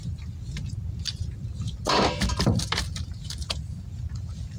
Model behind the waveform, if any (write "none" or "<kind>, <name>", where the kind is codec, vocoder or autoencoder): none